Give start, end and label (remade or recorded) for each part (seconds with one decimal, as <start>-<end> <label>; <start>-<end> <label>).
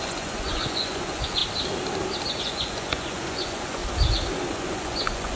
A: 0.0-1.4 remade; 1.4-2.4 recorded; 2.4-3.8 remade; 3.8-4.5 recorded; 4.5-5.4 remade